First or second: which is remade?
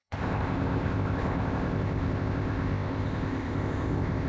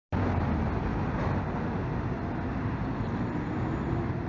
first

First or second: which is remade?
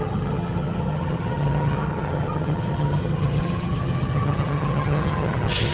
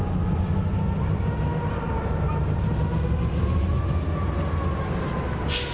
first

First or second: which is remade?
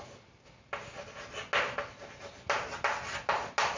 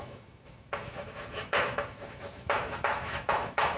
second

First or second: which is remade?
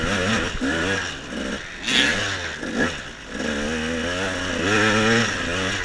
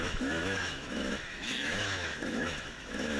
second